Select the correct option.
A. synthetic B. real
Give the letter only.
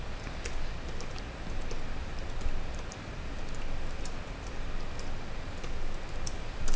B